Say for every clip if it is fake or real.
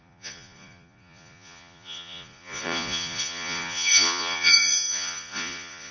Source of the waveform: fake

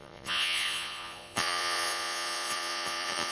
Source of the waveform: fake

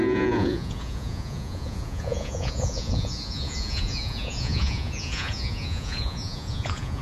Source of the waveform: fake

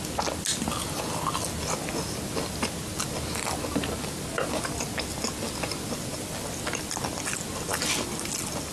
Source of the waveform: real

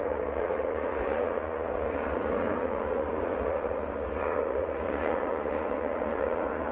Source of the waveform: fake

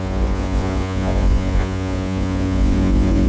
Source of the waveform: fake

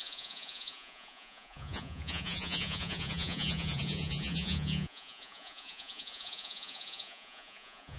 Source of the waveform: fake